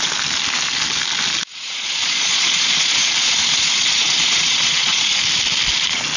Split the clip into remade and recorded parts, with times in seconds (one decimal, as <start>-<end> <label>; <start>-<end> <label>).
0.0-1.5 recorded; 1.5-5.2 remade; 5.2-6.2 recorded